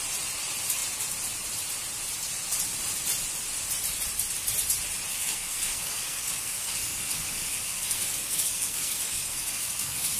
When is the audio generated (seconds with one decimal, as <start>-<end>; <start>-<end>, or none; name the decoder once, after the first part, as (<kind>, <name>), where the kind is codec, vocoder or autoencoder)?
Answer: 5.1-10.2 (codec, SNAC)

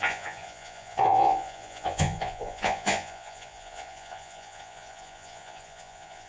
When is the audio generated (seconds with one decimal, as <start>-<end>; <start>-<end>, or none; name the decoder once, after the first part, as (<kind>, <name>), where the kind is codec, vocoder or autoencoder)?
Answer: 0.0-6.3 (vocoder, Vocos)

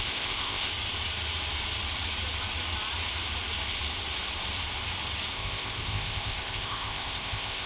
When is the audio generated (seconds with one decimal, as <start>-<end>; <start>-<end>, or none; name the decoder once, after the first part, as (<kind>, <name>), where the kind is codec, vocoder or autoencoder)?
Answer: 0.0-0.7 (codec, ZipCodec); 5.3-7.7

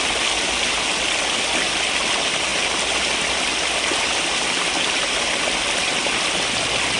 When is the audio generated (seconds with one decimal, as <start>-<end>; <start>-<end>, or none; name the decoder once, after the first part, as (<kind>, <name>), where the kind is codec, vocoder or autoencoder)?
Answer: none

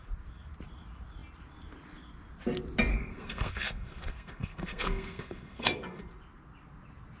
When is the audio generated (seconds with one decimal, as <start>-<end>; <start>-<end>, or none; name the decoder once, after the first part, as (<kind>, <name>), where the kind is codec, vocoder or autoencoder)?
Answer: 2.9-6.0 (codec, SNAC)

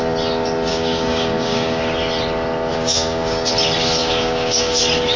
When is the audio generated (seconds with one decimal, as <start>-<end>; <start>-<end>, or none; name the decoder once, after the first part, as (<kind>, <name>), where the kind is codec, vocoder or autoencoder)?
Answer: 0.7-1.8 (codec, DAC); 2.7-3.5; 4.0-4.8

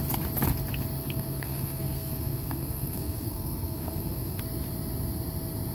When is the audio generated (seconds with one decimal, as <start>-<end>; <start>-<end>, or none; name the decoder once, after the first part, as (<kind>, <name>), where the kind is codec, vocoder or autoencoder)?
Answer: 1.0-4.4 (codec, SNAC)